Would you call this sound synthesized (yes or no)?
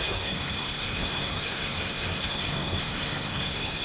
yes